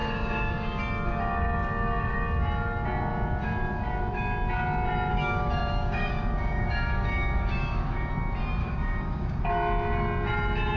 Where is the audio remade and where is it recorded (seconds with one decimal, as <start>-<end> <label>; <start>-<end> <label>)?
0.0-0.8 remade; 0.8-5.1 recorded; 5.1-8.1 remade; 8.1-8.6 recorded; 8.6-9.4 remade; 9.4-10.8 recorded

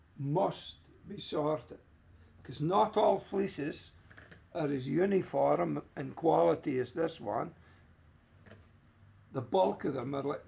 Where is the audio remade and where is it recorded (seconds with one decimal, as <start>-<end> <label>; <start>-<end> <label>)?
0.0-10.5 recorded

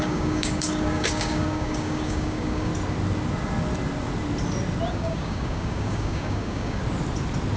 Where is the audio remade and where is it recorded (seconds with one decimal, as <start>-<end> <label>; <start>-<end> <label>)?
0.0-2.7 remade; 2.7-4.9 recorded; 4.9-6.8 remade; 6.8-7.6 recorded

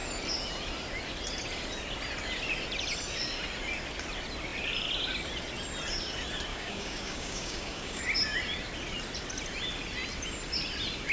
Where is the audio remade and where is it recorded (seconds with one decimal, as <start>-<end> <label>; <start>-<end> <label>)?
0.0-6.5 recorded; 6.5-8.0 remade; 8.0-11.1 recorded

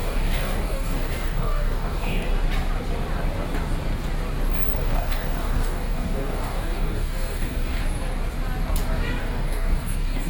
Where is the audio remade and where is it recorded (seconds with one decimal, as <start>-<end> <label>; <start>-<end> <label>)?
0.0-2.3 remade; 2.3-4.8 recorded; 4.8-7.8 remade; 7.8-9.2 recorded; 9.2-10.3 remade